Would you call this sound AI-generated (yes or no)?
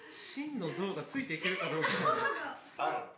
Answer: yes